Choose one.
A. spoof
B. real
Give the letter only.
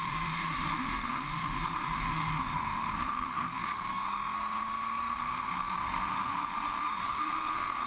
A